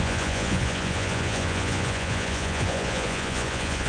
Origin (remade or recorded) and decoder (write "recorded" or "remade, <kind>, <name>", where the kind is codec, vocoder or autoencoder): remade, vocoder, Vocos